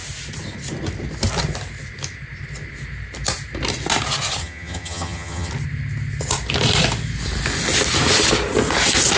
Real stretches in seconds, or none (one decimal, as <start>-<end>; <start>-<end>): 0.0-4.4; 5.5-9.2